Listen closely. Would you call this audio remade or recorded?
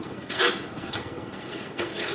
remade